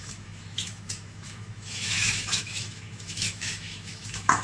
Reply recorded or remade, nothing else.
remade